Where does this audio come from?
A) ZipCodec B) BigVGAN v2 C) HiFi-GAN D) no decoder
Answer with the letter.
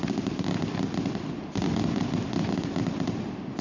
D